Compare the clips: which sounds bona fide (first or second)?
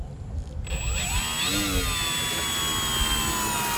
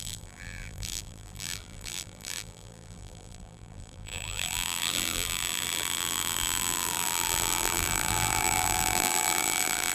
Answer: first